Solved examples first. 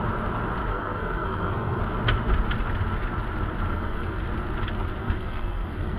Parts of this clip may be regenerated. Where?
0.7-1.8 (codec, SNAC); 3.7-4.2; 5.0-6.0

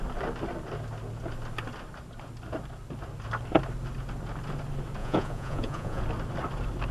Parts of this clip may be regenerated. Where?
5.0-6.0 (vocoder, Vocos)

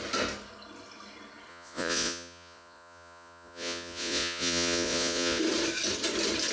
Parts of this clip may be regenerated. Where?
1.5-5.4 (vocoder, Vocos)

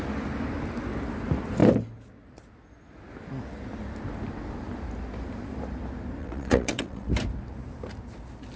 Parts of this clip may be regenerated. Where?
6.2-7.1 (vocoder, WaveNeXt)

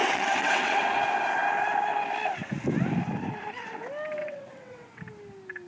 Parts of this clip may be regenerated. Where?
0.0-0.8 (vocoder, WaveNeXt); 4.2-5.0

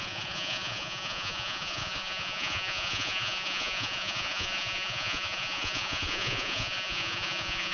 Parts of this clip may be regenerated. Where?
0.0-7.7 (vocoder, Vocos)

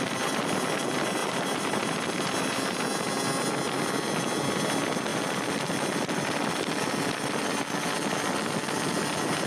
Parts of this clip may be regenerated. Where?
1.2-2.0 (vocoder, BigVGAN v2)

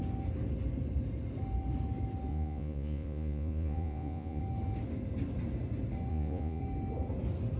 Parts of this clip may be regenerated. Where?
2.3-4.4 (vocoder, Vocos); 6.1-6.6